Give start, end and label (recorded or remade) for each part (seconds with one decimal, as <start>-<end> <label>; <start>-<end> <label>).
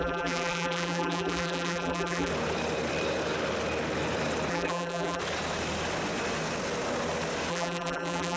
0.0-2.3 remade; 2.3-4.5 recorded; 4.5-5.2 remade; 5.2-7.5 recorded; 7.5-8.4 remade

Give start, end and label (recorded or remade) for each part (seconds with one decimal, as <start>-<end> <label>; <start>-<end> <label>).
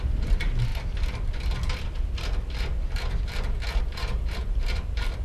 0.0-0.7 remade; 0.7-3.8 recorded; 3.8-5.2 remade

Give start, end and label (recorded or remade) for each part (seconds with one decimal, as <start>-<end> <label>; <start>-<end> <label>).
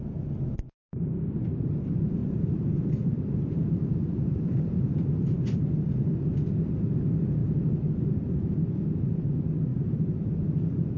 0.0-2.2 recorded; 2.2-6.1 remade; 6.1-9.7 recorded; 9.7-10.4 remade; 10.4-11.0 recorded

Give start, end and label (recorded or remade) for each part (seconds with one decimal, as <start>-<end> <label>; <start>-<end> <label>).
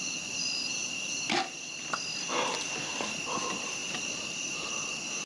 0.0-3.8 recorded; 3.8-4.7 remade; 4.7-5.3 recorded